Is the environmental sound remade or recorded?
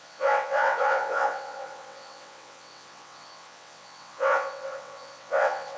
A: remade